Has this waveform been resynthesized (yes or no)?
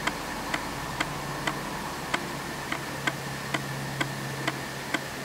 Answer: no